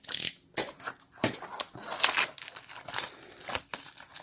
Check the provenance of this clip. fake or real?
real